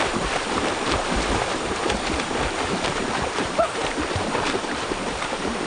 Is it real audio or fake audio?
fake